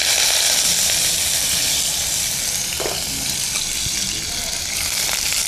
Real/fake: real